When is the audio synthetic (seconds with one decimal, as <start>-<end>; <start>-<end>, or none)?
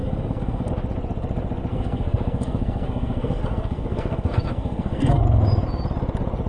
0.0-0.7; 1.7-5.2